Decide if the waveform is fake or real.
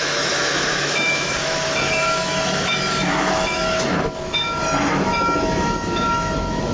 fake